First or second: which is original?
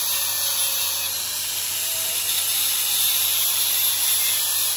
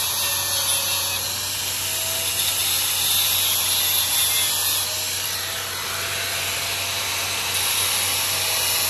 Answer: second